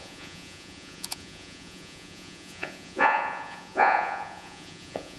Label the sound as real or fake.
fake